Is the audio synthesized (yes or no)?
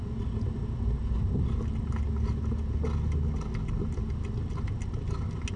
no